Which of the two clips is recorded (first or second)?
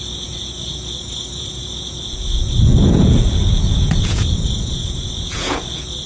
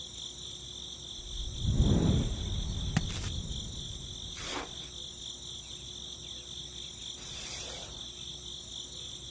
second